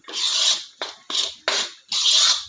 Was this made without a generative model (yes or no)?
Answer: yes